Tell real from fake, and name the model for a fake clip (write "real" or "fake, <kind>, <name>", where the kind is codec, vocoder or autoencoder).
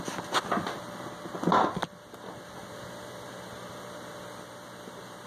real